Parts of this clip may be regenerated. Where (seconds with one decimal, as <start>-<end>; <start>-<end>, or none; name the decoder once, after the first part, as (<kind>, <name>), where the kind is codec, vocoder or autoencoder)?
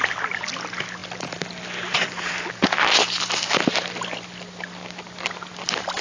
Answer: none